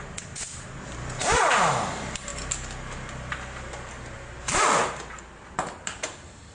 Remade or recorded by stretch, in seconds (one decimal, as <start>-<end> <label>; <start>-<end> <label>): 0.0-6.5 recorded